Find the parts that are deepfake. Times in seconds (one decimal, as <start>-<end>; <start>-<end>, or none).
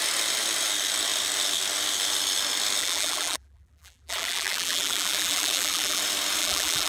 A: 2.8-6.0; 6.4-6.9